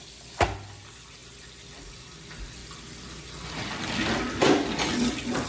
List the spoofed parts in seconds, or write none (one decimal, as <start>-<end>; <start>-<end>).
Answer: none